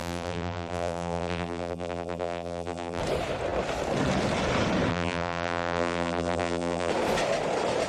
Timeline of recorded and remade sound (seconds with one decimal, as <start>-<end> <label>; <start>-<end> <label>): 0.0-3.0 remade; 3.0-4.9 recorded; 4.9-6.9 remade; 6.9-7.9 recorded